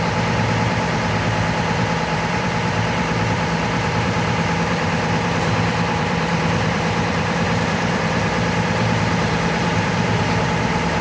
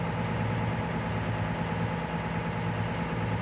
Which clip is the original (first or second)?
second